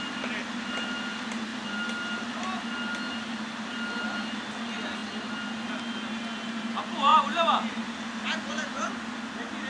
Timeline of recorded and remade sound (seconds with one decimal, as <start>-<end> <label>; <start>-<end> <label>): 0.0-9.7 recorded